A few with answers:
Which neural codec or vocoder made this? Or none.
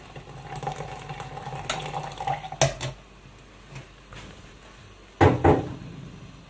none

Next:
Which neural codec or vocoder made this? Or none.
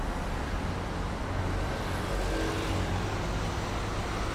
none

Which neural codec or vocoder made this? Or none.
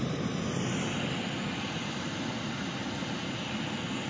none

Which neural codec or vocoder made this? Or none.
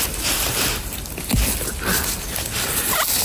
none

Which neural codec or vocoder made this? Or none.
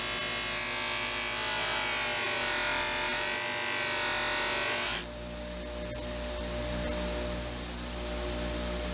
none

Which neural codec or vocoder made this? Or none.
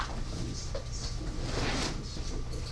none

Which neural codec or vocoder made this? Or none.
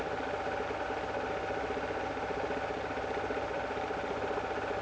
none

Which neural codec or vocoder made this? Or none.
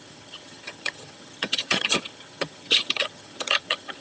vocoder, HiFi-GAN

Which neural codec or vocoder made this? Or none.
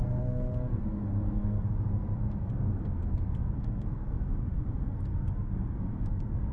codec, SNAC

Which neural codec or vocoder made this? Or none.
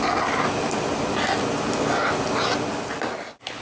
none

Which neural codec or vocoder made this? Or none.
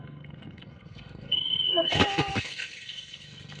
codec, SNAC